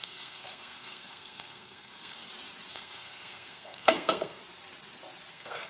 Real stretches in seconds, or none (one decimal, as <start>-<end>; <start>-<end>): 2.2-2.7; 4.4-5.3